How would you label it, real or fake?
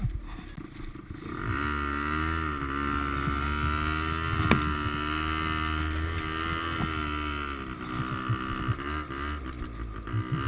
real